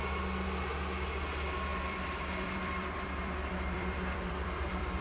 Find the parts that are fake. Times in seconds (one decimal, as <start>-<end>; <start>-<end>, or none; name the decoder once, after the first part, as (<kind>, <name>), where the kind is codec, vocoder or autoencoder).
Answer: 1.7-5.0 (vocoder, BigVGAN v2)